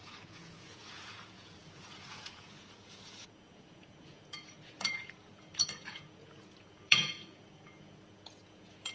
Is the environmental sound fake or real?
fake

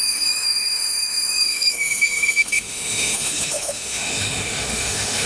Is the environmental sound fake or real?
fake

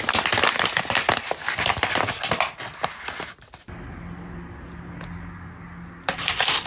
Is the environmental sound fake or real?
real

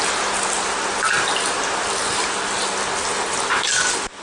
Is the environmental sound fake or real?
real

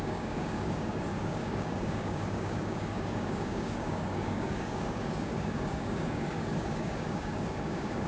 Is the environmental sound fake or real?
fake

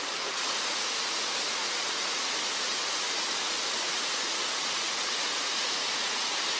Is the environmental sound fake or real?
fake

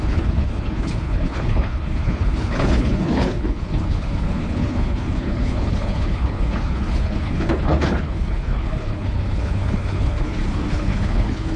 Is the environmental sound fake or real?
fake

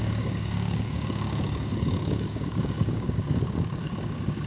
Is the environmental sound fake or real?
fake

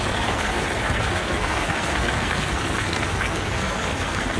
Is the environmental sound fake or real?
fake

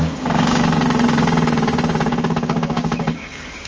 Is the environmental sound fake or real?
fake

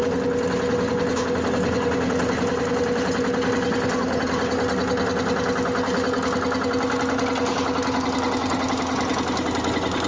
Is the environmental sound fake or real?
real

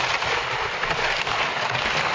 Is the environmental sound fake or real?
real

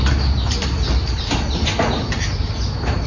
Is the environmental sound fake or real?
real